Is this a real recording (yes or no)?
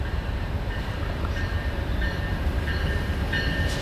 no